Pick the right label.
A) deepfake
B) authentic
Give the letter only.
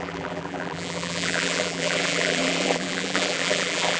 A